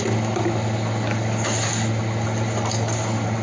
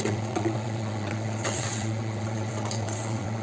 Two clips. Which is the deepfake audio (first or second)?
second